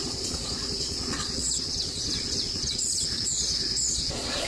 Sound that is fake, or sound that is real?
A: fake